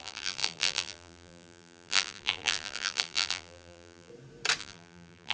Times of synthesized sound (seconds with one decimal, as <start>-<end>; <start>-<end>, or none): 0.0-4.1; 4.6-5.3